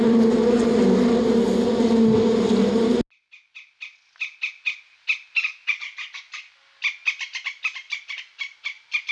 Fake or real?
real